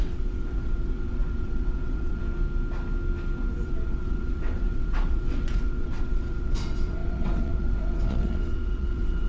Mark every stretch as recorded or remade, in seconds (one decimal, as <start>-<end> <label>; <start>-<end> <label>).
0.0-2.2 remade; 2.2-3.5 recorded; 3.5-9.3 remade